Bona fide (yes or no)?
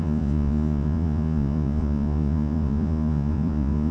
no